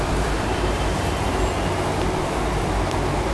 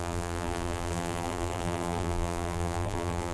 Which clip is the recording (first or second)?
first